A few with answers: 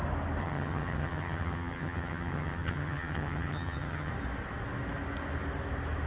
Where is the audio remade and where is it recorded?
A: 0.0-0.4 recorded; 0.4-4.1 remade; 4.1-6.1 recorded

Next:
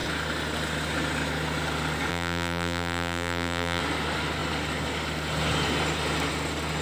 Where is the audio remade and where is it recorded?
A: 0.0-2.1 recorded; 2.1-3.8 remade; 3.8-6.8 recorded

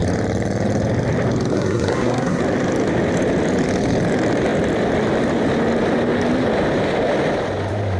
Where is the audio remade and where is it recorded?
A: 0.0-1.5 recorded; 1.5-2.4 remade; 2.4-8.0 recorded

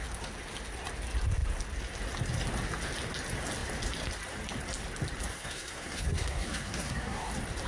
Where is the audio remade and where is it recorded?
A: 0.0-5.3 recorded; 5.3-7.3 remade; 7.3-7.7 recorded